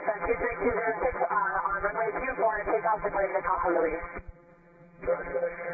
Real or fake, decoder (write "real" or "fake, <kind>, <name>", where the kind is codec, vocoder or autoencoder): fake, vocoder, BigVGAN v2